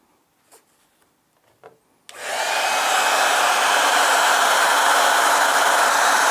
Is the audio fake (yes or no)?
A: no